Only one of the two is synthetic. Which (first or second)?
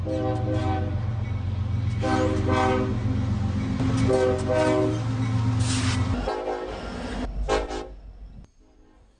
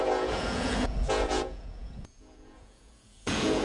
second